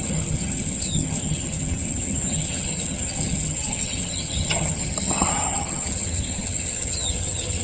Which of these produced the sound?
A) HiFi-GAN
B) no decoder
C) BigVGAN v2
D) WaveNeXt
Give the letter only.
A